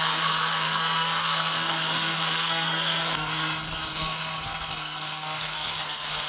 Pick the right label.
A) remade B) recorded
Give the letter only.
A